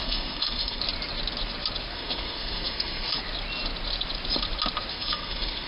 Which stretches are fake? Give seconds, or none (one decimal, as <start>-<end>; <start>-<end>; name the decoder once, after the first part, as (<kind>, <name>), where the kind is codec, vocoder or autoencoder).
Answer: 0.0-0.8 (codec, SNAC); 1.9-3.2; 4.9-5.7